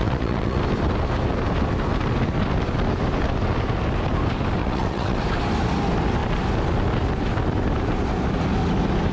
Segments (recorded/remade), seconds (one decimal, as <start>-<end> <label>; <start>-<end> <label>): 0.0-0.6 remade; 0.6-4.6 recorded; 4.6-5.2 remade; 5.2-9.1 recorded